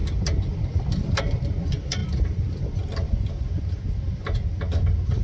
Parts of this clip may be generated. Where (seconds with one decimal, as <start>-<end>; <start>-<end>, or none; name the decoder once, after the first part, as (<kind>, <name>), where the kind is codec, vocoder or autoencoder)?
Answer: none